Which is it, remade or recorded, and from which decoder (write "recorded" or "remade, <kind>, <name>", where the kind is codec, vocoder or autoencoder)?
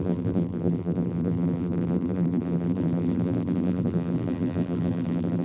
remade, vocoder, BigVGAN v2